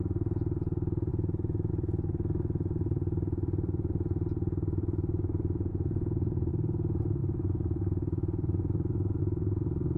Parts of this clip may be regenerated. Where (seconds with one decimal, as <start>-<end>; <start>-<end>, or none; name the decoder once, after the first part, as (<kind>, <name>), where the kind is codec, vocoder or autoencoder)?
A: 1.1-1.7 (vocoder, Vocos); 5.7-6.5